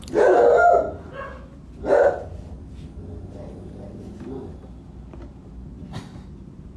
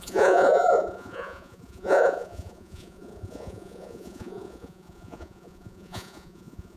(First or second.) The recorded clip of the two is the first